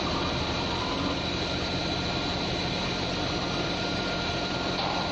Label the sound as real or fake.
fake